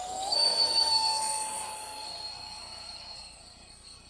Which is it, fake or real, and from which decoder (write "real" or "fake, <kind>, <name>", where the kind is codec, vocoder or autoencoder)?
fake, codec, SNAC